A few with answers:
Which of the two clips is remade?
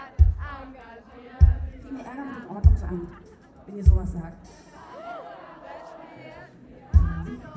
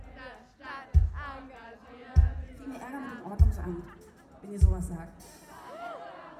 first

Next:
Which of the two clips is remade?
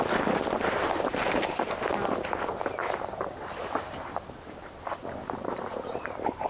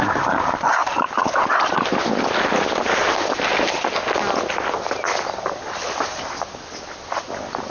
first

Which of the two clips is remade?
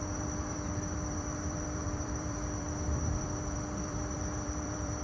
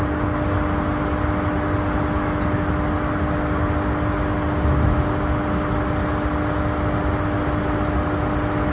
first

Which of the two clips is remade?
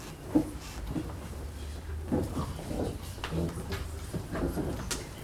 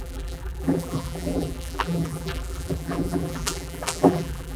second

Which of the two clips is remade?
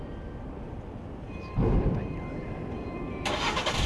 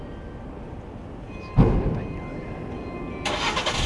first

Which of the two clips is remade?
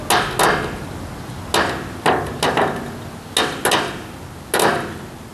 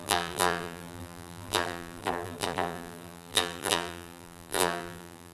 second